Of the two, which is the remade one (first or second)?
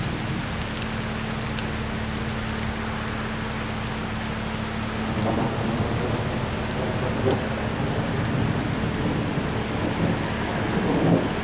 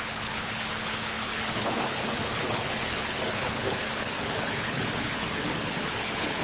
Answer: second